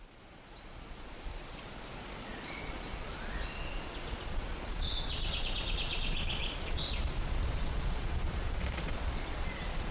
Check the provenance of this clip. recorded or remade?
remade